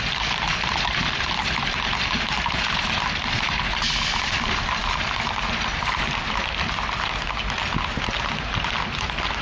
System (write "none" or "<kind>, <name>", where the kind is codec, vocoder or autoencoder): none